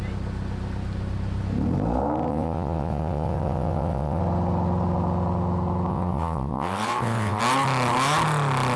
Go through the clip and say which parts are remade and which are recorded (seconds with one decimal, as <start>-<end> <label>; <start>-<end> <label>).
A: 0.0-2.3 recorded; 2.3-4.2 remade; 4.2-5.9 recorded; 5.9-7.4 remade; 7.4-8.8 recorded